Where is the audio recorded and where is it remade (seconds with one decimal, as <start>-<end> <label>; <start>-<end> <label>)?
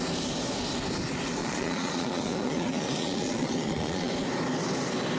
0.0-1.4 recorded; 1.4-4.1 remade; 4.1-5.2 recorded